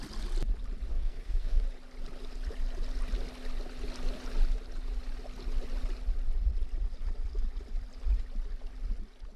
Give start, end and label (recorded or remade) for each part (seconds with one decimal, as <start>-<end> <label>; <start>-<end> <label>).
0.0-0.9 recorded; 0.9-1.6 remade; 1.6-9.4 recorded